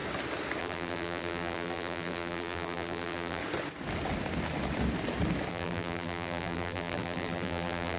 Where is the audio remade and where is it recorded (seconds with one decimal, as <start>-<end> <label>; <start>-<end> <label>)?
0.0-0.6 recorded; 0.6-3.4 remade; 3.4-5.5 recorded; 5.5-8.0 remade

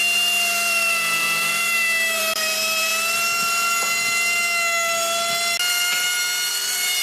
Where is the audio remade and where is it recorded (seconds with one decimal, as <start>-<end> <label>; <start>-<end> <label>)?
0.0-2.9 remade; 2.9-6.5 recorded; 6.5-7.0 remade